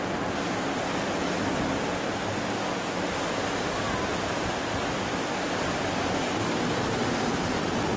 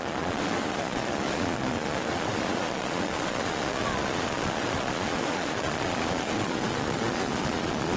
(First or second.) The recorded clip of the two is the first